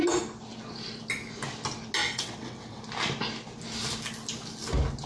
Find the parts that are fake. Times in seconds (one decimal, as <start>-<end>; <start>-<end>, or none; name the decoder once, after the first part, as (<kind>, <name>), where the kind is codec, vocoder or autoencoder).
2.0-2.8 (vocoder, WaveNeXt)